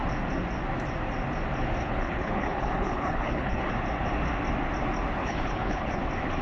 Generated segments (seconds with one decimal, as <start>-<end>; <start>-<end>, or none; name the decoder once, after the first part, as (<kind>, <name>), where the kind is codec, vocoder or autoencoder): 1.8-3.7 (codec, HILCodec); 5.2-6.0